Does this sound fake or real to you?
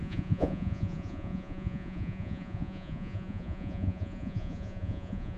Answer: fake